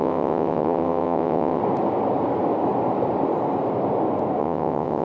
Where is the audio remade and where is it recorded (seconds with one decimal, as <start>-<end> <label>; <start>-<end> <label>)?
0.0-1.6 remade; 1.6-4.4 recorded; 4.4-5.0 remade